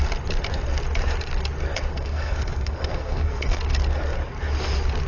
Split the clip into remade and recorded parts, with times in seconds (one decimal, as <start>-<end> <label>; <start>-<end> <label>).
0.0-1.9 recorded; 1.9-3.6 remade; 3.6-5.1 recorded